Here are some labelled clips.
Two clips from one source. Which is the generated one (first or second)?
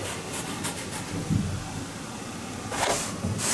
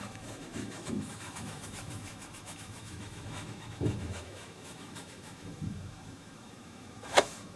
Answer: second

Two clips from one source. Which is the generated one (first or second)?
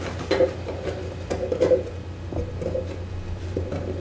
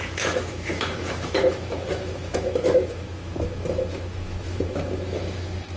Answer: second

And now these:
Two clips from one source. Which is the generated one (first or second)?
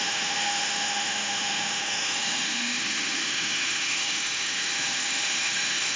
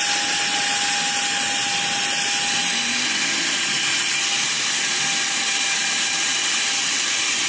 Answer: first